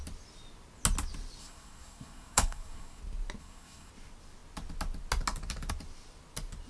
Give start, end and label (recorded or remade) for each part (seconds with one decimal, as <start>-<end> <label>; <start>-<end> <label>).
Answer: 0.0-1.4 recorded; 1.4-3.0 remade; 3.0-3.4 recorded; 3.4-3.9 remade; 3.9-6.7 recorded